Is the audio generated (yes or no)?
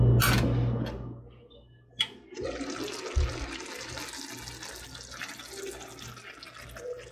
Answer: no